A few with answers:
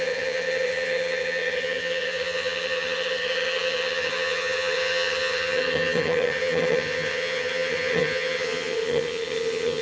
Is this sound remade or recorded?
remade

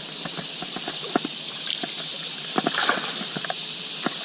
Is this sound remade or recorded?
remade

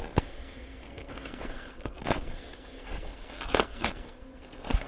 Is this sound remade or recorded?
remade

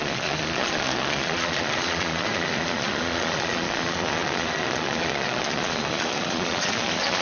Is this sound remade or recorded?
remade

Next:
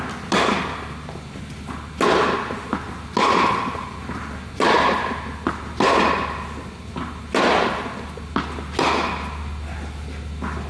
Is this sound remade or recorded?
recorded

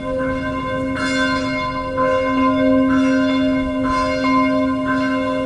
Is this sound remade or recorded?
recorded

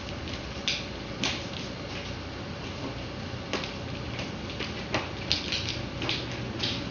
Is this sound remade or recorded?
recorded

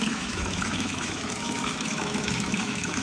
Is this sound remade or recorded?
remade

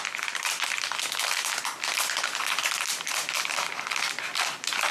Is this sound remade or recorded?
remade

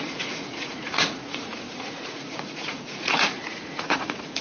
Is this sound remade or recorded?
remade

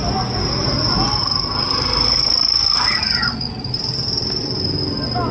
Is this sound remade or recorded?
recorded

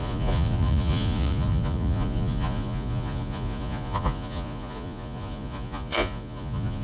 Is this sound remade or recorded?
remade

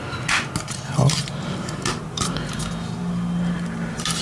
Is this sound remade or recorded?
recorded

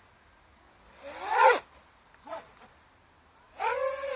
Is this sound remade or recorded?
recorded